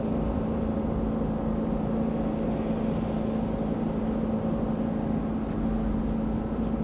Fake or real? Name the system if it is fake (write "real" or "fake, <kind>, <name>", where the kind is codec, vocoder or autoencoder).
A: real